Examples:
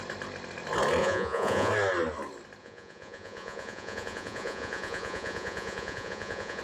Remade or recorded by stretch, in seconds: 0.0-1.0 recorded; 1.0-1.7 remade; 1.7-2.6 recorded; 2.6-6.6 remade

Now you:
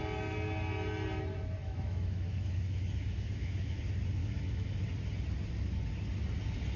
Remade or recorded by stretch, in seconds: 0.0-1.6 recorded; 1.6-3.8 remade; 3.8-4.2 recorded; 4.2-4.7 remade; 4.7-6.8 recorded

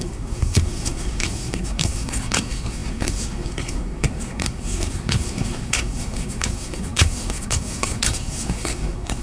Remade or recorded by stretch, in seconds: 0.0-9.2 remade

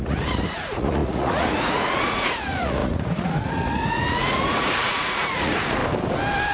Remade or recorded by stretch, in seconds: 0.0-5.8 remade; 5.8-6.5 recorded